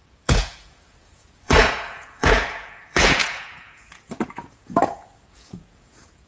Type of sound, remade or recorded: remade